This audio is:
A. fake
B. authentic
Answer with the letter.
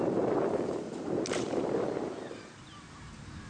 A